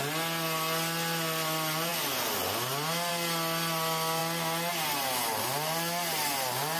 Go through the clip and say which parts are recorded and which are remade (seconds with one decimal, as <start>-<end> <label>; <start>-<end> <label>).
0.0-6.8 recorded